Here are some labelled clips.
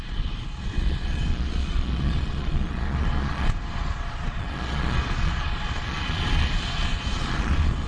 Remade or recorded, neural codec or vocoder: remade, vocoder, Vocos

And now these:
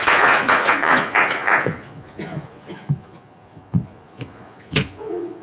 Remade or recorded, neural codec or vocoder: remade, vocoder, Vocos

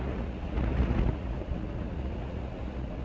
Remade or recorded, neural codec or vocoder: remade, vocoder, Vocos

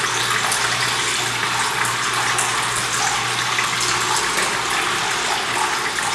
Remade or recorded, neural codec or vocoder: recorded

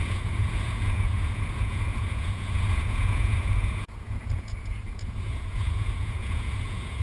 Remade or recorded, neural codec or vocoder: remade, vocoder, Vocos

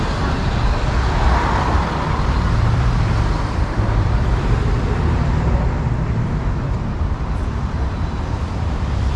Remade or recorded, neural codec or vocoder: remade, vocoder, BigVGAN v2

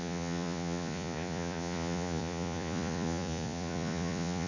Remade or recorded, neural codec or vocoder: remade, vocoder, Vocos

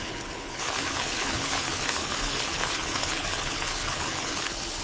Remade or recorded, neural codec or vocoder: remade, codec, HILCodec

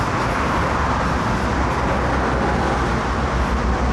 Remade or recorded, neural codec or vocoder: recorded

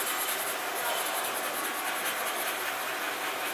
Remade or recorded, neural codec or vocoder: recorded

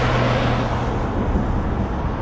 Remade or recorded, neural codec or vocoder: recorded